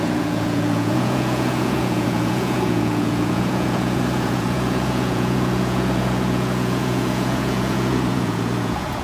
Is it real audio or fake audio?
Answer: fake